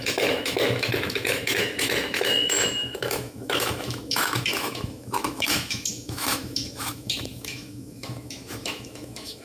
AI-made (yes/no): yes